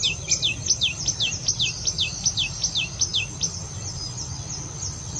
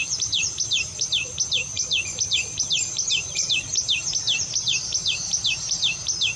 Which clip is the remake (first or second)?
second